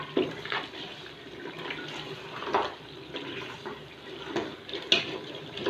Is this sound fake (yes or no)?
no